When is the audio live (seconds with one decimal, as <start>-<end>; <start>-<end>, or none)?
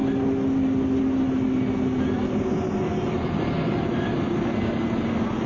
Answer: 0.0-5.5